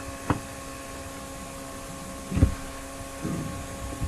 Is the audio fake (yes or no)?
no